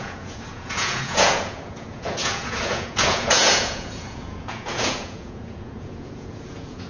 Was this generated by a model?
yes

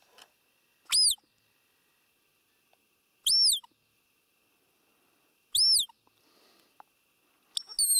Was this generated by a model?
no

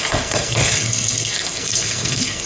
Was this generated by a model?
yes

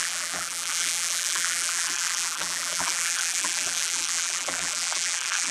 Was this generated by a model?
yes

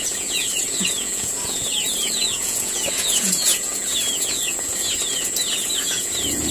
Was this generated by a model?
yes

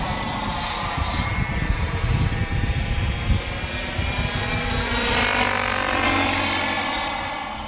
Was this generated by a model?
no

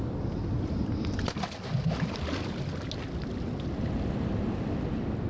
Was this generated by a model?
no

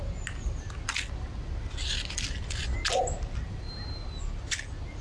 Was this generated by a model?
no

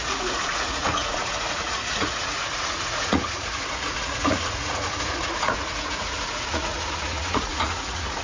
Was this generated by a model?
yes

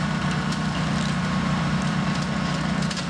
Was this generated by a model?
yes